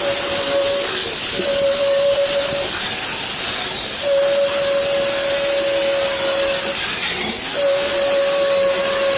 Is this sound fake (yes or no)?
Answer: no